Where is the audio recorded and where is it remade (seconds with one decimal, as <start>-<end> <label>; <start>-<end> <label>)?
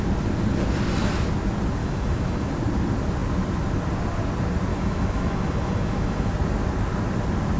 0.0-1.8 recorded; 1.8-2.5 remade; 2.5-4.7 recorded; 4.7-6.3 remade; 6.3-7.6 recorded